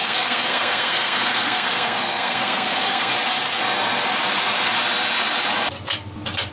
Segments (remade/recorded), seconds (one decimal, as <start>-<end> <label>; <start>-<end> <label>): 0.0-3.1 remade; 3.1-6.5 recorded